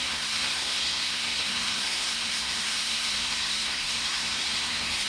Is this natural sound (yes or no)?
no